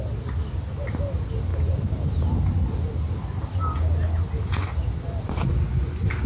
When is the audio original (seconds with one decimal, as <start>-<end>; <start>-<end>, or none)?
0.0-6.3